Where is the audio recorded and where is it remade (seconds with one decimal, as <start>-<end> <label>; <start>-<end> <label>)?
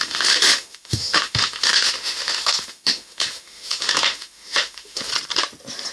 0.0-5.1 remade; 5.1-5.9 recorded